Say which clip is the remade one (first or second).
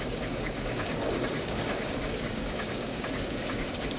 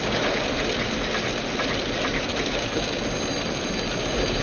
first